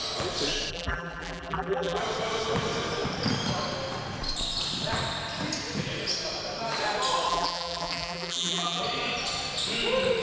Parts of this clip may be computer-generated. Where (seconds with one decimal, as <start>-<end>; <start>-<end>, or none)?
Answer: 0.7-2.0; 7.3-8.8